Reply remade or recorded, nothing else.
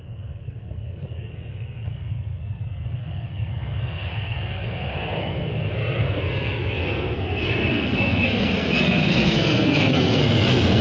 remade